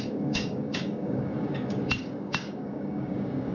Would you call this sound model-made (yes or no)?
yes